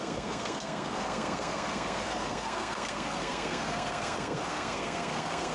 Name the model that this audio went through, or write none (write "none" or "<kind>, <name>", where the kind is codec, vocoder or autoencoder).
codec, SNAC